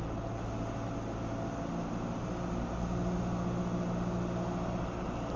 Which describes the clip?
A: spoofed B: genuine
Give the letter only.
B